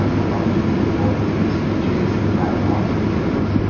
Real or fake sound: real